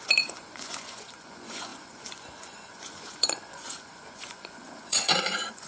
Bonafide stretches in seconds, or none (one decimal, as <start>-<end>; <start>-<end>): none